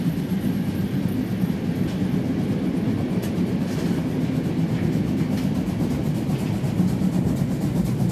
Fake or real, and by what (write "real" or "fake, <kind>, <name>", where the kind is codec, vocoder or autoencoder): real